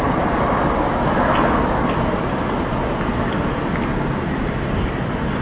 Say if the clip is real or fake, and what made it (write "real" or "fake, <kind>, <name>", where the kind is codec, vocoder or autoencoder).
real